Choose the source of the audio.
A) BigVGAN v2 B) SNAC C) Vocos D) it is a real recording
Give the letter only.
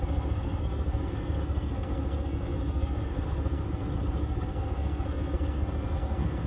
B